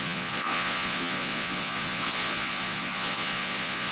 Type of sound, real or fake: fake